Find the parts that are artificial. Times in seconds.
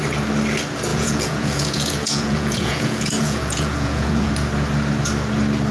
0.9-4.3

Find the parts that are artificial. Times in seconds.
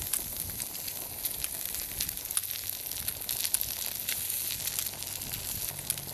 none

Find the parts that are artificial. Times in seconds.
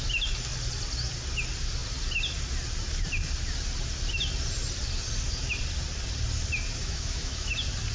6.8-7.5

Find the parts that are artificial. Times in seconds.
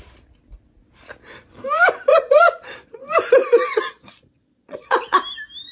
2.1-3.0; 3.4-5.2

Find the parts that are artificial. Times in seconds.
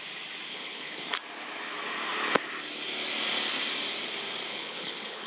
0.5-1.0; 4.5-5.3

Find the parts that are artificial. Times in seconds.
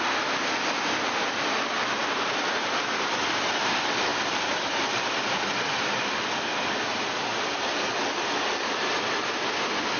4.1-5.4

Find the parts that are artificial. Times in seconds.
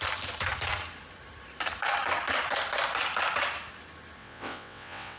4.2-5.2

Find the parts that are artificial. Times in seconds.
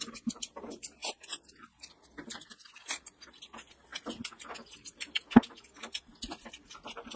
none